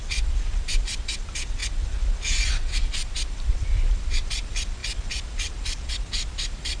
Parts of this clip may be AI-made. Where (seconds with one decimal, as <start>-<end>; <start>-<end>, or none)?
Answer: none